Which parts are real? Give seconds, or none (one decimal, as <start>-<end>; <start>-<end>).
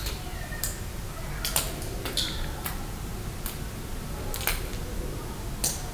0.0-5.9